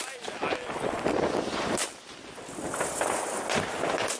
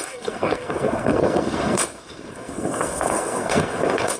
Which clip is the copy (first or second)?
second